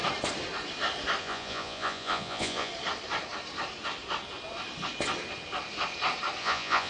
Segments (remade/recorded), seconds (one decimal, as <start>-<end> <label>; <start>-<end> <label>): 0.0-1.2 recorded; 1.2-2.7 remade; 2.7-6.4 recorded; 6.4-6.9 remade